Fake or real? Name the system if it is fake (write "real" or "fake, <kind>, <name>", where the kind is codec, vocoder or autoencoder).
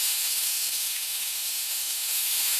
fake, autoencoder, DAC-VAE